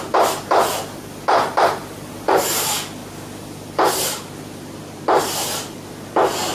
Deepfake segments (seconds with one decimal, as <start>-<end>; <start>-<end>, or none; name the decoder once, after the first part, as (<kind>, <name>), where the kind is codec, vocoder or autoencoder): none